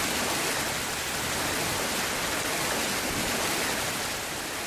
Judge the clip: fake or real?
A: real